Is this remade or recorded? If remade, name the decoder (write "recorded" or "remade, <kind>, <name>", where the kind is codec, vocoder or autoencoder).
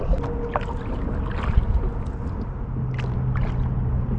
recorded